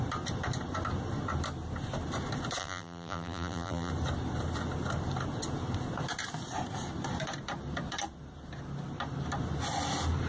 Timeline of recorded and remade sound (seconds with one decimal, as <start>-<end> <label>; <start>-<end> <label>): 0.0-2.6 recorded; 2.6-3.9 remade; 3.9-10.3 recorded